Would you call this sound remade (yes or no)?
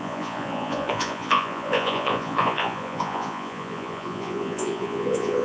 yes